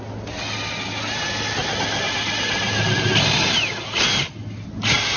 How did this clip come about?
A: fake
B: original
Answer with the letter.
B